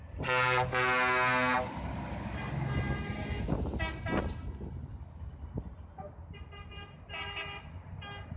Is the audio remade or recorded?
recorded